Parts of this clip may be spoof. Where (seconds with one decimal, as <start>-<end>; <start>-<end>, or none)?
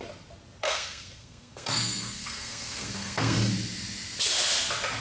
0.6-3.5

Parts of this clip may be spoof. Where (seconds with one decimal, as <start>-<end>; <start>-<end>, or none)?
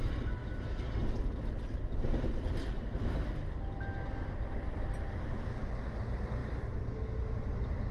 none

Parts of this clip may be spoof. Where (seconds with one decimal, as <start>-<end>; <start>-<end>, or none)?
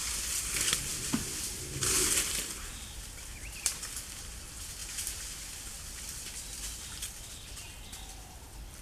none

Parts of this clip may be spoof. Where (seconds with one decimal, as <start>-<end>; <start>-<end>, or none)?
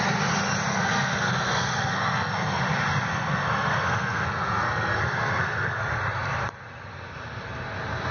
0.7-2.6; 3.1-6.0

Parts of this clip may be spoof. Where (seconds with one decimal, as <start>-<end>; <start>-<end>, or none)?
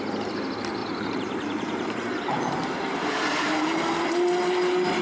0.8-3.8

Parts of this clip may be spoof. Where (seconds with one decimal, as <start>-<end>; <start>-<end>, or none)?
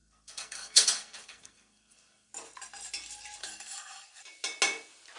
0.0-2.3; 3.4-4.2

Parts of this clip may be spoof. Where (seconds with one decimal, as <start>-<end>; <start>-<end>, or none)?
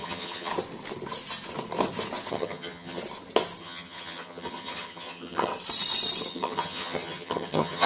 0.0-0.5; 2.3-3.0; 3.6-5.5; 6.3-7.9